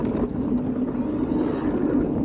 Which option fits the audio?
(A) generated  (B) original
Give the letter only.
B